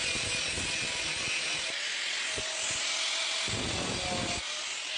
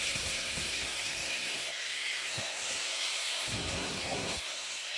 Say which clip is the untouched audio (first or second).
first